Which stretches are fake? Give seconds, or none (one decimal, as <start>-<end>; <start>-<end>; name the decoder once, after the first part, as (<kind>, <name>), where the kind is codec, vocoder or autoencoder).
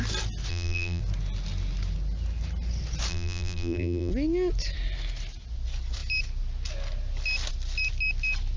0.5-1.0 (vocoder, BigVGAN v2); 3.1-4.1